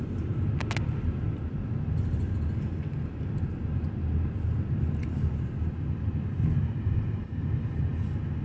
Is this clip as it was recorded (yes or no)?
yes